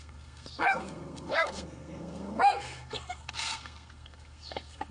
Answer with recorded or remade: remade